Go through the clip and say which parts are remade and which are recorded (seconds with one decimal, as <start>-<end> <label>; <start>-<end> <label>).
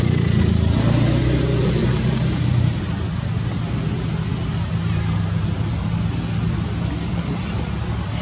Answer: 0.0-1.8 recorded; 1.8-2.8 remade; 2.8-8.2 recorded